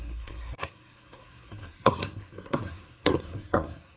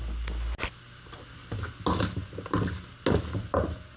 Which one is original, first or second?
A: second